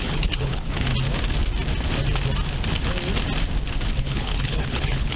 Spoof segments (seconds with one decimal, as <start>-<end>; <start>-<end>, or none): 0.0-0.9; 4.0-5.2